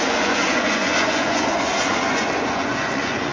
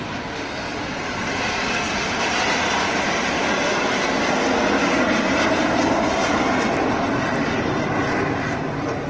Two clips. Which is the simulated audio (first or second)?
first